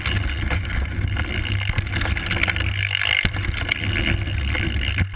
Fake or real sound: real